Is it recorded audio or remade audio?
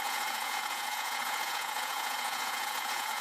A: remade